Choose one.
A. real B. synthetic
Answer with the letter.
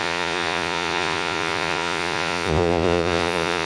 B